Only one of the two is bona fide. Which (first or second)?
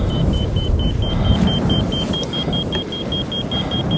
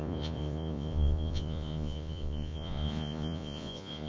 first